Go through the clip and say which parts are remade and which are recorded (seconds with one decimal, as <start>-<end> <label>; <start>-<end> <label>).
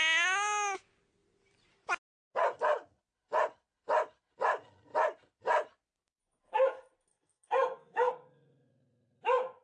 0.0-7.1 recorded; 7.1-8.1 remade; 8.1-9.6 recorded